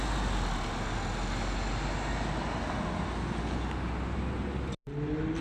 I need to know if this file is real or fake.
real